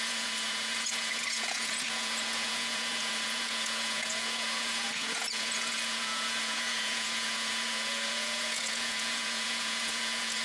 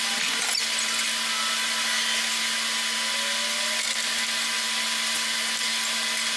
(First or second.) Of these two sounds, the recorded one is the second